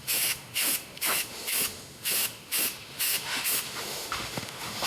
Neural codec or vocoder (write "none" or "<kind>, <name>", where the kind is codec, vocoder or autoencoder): autoencoder, DAC-VAE